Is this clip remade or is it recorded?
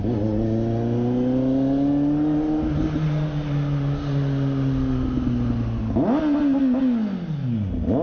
recorded